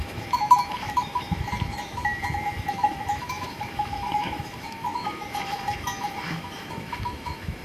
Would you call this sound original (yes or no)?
no